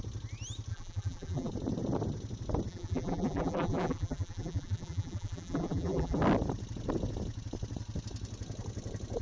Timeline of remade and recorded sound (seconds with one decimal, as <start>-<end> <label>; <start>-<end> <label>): 0.0-0.7 recorded; 0.7-1.5 remade; 1.5-2.7 recorded; 2.7-6.2 remade; 6.2-9.2 recorded